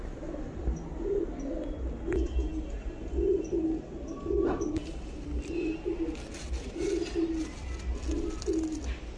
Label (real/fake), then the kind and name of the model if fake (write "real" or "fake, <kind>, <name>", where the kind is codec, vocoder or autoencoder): real